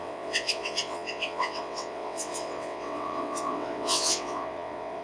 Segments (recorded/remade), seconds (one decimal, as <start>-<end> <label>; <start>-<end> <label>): 0.0-5.0 remade